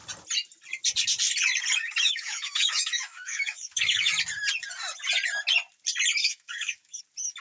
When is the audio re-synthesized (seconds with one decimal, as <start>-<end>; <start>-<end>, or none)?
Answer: 1.8-4.1; 6.2-7.0